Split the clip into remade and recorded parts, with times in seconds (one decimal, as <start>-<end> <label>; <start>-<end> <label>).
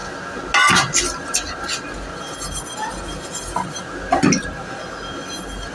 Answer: 0.0-5.7 recorded